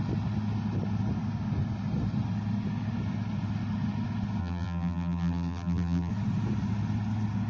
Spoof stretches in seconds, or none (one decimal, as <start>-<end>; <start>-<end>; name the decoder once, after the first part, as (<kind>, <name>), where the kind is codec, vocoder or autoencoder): 4.4-6.1 (vocoder, BigVGAN v2)